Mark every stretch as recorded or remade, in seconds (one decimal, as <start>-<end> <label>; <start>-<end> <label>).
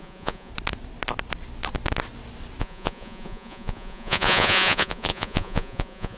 0.0-0.5 remade; 0.5-2.6 recorded; 2.6-6.2 remade